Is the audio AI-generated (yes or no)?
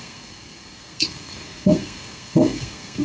yes